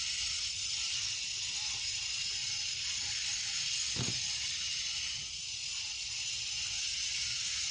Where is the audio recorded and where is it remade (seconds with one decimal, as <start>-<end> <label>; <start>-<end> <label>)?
0.0-7.7 recorded